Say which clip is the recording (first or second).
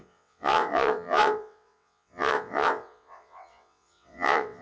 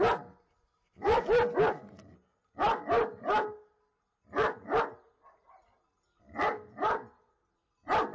second